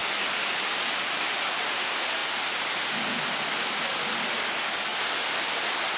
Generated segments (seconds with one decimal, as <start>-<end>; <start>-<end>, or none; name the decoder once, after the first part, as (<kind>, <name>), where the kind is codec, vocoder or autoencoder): none